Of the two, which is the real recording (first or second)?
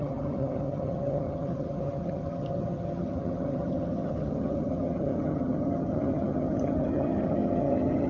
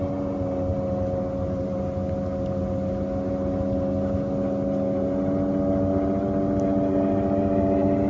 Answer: second